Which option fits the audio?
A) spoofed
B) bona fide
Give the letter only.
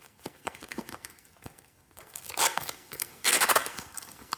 A